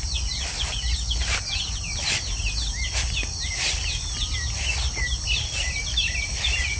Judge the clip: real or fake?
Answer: real